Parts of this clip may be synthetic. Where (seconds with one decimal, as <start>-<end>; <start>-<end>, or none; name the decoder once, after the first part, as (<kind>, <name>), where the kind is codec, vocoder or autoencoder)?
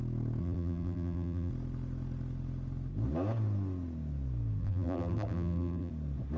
0.4-1.5 (vocoder, BigVGAN v2); 4.6-5.9